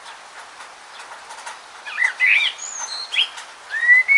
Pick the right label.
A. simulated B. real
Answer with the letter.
B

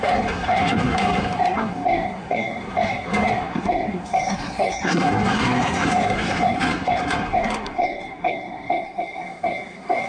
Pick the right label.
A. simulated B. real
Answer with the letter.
A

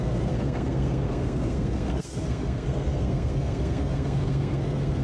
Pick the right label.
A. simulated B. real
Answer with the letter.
A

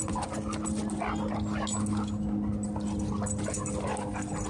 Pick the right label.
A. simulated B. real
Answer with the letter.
B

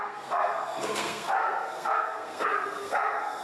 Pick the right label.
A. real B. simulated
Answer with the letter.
B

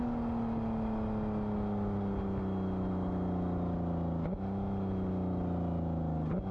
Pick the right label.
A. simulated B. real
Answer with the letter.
B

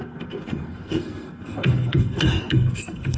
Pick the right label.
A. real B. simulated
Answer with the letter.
B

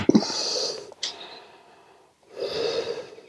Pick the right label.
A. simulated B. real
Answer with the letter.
B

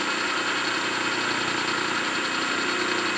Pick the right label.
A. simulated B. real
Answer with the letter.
B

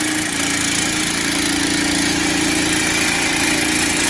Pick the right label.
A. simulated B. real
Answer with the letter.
B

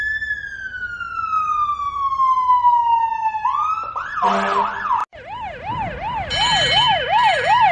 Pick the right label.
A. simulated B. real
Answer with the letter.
B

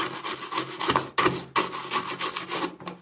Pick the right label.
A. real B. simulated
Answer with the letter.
A